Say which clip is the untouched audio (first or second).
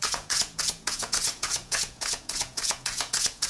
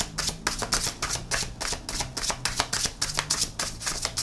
second